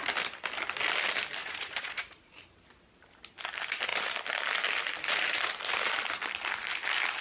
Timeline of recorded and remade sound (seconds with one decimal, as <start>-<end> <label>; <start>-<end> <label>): 0.0-1.4 recorded; 1.4-2.3 remade; 2.3-7.2 recorded